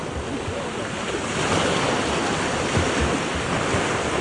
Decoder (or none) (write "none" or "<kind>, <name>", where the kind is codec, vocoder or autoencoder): none